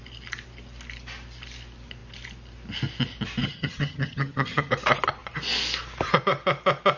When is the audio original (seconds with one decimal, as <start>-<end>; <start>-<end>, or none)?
0.0-3.4; 4.7-7.0